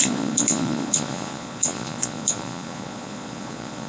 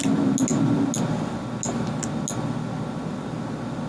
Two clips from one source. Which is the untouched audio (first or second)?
second